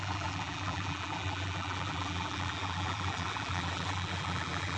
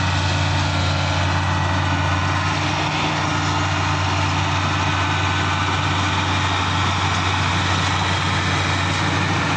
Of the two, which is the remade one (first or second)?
first